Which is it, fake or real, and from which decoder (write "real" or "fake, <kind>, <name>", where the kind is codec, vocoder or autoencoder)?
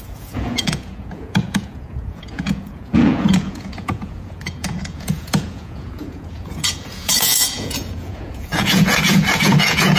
fake, vocoder, Vocos